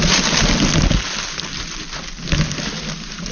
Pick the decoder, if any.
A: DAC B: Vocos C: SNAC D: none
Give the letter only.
D